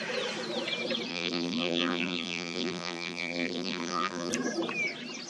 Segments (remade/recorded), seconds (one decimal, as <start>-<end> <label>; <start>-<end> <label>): 0.0-1.1 recorded; 1.1-4.3 remade; 4.3-5.3 recorded